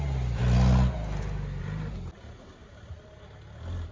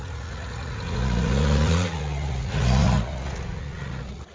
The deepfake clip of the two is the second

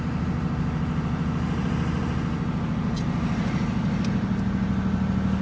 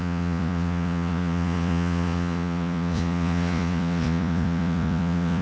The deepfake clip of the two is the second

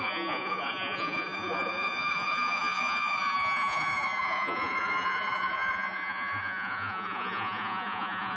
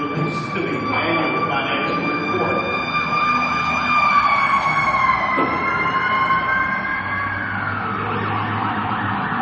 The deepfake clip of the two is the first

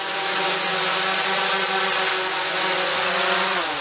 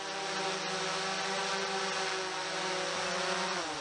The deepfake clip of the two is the first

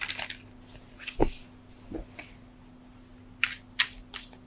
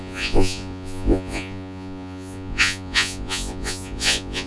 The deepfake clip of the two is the second